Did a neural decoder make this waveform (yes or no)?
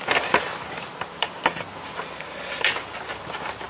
no